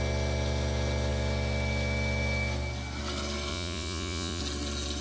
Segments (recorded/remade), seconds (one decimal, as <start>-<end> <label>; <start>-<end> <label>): 0.0-3.5 recorded; 3.5-4.4 remade; 4.4-5.0 recorded